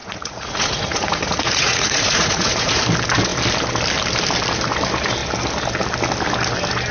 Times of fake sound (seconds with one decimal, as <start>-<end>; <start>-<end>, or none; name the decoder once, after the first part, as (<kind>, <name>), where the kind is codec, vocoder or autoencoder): 0.0-2.8 (vocoder, Vocos)